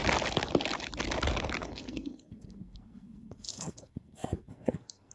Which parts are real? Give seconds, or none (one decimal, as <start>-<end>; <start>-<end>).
0.0-1.6